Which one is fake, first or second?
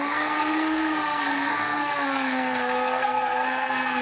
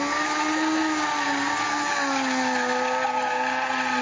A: first